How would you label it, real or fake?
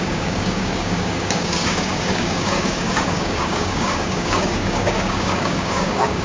fake